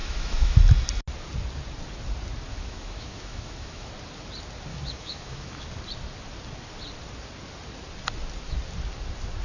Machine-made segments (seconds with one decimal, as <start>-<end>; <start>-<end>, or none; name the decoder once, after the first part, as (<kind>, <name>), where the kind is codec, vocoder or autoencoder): 0.0-0.6 (autoencoder, DAC-VAE); 2.5-3.9; 4.7-5.7